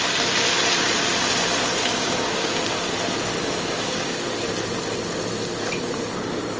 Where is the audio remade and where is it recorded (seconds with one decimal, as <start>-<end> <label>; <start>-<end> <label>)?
0.0-1.8 recorded; 1.8-2.6 remade; 2.6-3.4 recorded; 3.4-4.2 remade; 4.2-6.6 recorded